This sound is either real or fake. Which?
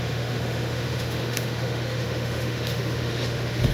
fake